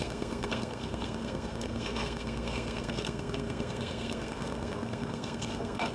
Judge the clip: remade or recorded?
remade